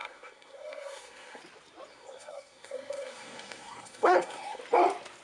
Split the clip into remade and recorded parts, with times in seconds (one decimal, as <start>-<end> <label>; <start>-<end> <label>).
0.0-1.4 remade; 1.4-1.9 recorded; 1.9-4.6 remade; 4.6-5.2 recorded